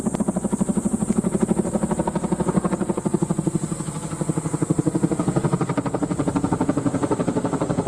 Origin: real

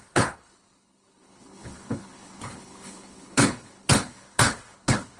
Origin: fake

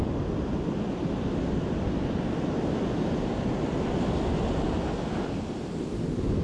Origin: real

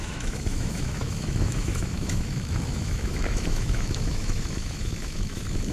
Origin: fake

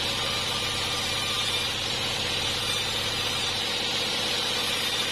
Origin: fake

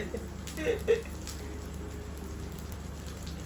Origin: real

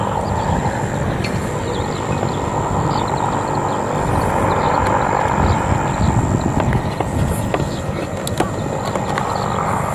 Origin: real